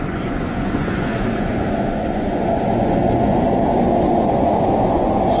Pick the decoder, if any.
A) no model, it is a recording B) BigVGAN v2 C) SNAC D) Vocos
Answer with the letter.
D